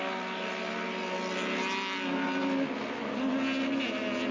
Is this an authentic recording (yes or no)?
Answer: yes